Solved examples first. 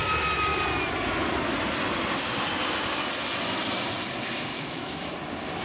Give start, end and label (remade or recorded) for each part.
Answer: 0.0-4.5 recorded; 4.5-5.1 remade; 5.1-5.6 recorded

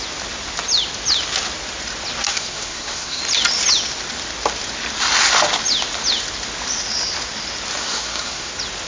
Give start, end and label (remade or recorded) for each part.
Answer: 0.0-2.3 recorded; 2.3-3.2 remade; 3.2-7.8 recorded; 7.8-8.5 remade; 8.5-8.9 recorded

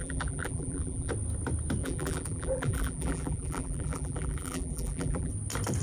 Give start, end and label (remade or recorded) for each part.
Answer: 0.0-1.1 remade; 1.1-1.8 recorded; 1.8-5.3 remade; 5.3-5.8 recorded

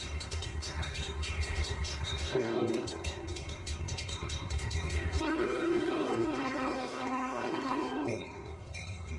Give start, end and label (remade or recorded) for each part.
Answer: 0.0-9.2 remade

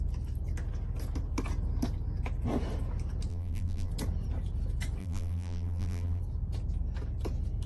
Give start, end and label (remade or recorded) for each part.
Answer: 0.0-3.3 recorded; 3.3-3.9 remade; 3.9-5.0 recorded; 5.0-6.2 remade; 6.2-7.7 recorded

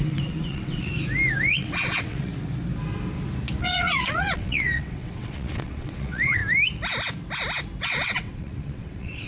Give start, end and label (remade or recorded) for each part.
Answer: 0.0-0.9 remade; 0.9-1.5 recorded; 1.5-2.3 remade; 2.3-3.6 recorded; 3.6-6.4 remade; 6.4-7.8 recorded; 7.8-9.3 remade

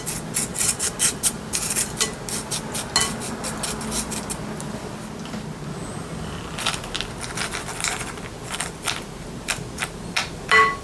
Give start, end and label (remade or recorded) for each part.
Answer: 0.0-0.5 recorded; 0.5-1.5 remade; 1.5-5.9 recorded; 5.9-6.4 remade; 6.4-10.8 recorded

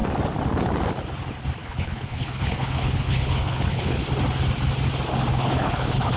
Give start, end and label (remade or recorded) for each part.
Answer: 0.0-1.6 recorded; 1.6-4.0 remade; 4.0-5.3 recorded; 5.3-6.2 remade